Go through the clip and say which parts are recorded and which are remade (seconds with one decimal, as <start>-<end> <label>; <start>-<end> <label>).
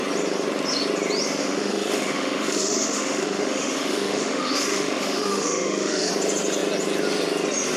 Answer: 0.0-1.4 recorded; 1.4-6.1 remade; 6.1-7.8 recorded